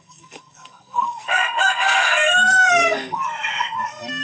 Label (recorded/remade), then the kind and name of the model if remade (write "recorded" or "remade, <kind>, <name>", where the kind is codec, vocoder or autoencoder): remade, codec, SNAC